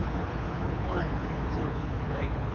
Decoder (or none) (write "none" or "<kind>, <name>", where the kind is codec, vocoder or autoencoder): codec, HILCodec